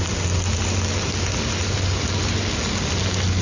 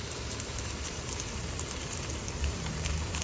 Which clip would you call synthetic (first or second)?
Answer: second